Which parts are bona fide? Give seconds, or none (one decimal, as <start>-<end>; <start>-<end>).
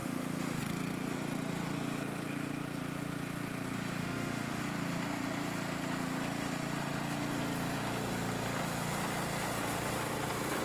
0.6-4.0; 4.6-10.6